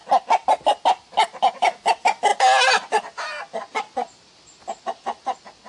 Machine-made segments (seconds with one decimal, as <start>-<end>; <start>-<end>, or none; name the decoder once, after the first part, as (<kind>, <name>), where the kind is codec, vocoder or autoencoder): none